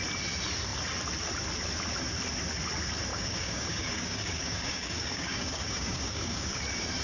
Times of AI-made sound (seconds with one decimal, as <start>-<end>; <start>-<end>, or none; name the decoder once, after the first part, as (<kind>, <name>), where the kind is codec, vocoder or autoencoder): 3.1-6.6 (codec, DAC)